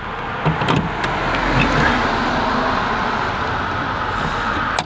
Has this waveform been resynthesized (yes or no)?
no